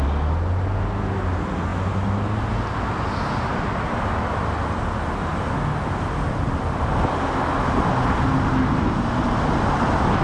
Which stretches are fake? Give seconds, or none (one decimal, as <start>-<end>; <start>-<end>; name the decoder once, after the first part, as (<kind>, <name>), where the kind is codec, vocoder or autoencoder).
none